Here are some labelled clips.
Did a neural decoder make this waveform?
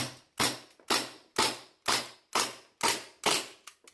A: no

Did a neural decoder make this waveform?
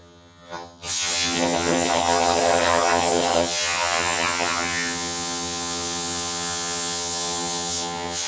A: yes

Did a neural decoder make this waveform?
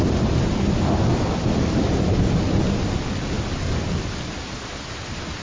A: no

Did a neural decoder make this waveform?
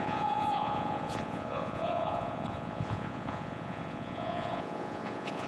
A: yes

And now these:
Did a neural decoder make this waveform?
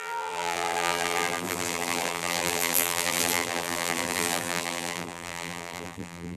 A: yes